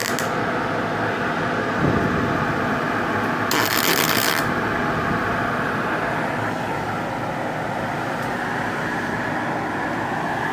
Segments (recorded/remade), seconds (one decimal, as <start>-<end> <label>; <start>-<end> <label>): 0.0-10.5 recorded